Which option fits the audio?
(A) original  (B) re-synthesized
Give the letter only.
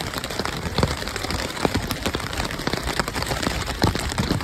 B